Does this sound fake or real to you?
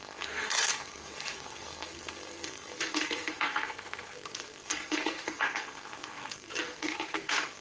fake